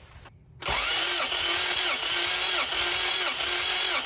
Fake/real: real